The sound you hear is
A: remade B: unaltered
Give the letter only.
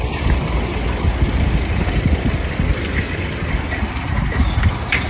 B